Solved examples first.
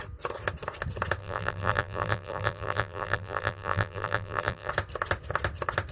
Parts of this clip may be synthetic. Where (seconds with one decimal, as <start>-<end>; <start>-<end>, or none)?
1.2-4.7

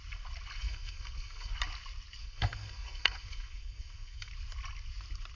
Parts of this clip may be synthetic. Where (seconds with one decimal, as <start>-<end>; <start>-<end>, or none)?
0.6-1.5; 2.2-4.3

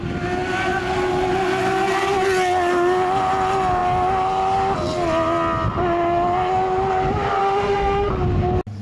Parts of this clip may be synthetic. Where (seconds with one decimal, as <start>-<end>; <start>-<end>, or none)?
7.4-8.1